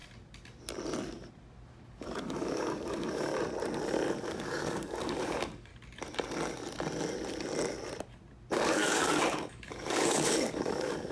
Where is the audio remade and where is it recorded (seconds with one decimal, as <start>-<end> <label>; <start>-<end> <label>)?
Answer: 0.0-1.9 recorded; 1.9-3.3 remade; 3.3-4.2 recorded; 4.2-5.7 remade; 5.7-8.5 recorded; 8.5-11.1 remade